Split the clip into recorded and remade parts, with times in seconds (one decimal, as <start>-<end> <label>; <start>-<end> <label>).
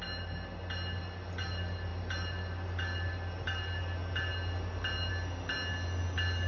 0.0-6.5 recorded